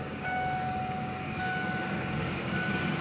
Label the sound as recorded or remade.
remade